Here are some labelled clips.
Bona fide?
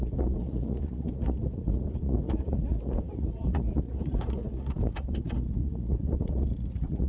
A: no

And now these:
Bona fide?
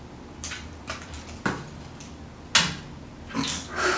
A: yes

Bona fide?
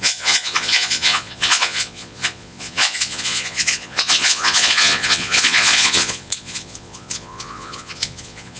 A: no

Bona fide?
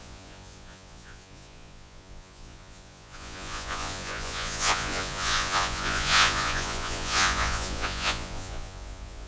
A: no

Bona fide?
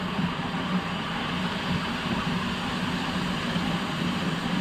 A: yes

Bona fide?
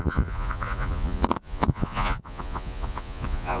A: no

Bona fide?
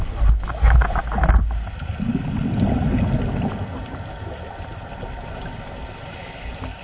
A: yes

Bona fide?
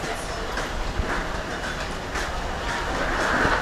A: yes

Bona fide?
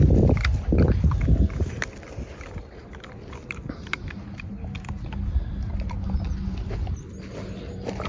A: yes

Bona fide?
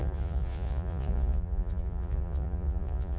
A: no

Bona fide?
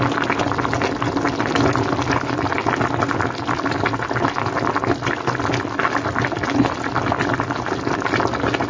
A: yes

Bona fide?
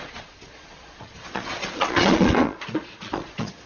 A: no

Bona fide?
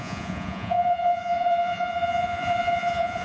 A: no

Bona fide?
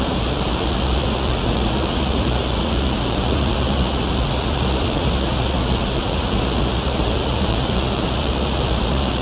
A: no